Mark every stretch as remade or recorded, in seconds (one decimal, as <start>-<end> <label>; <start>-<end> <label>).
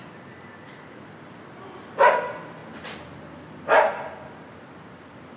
0.0-5.4 recorded